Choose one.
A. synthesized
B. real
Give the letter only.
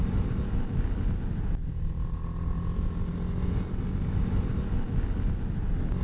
B